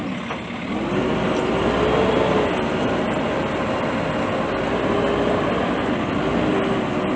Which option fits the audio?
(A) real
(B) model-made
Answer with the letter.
A